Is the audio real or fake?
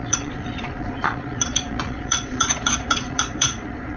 fake